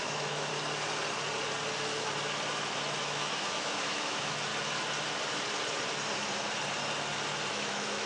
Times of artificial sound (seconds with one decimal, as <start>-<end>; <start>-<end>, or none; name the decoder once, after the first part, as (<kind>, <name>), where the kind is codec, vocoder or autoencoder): 0.0-0.5 (autoencoder, DAC-VAE); 3.0-4.5; 7.5-8.1